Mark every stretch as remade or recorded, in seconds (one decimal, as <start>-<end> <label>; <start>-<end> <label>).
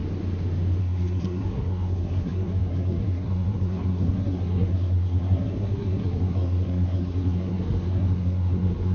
0.0-0.8 recorded; 0.8-8.9 remade